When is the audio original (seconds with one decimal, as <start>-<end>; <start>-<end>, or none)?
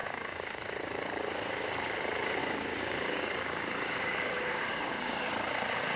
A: 0.6-2.4; 5.3-6.0